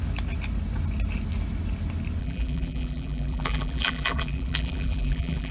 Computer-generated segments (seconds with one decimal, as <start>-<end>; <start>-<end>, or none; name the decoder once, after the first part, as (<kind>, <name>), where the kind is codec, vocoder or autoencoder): 2.2-5.5 (vocoder, BigVGAN v2)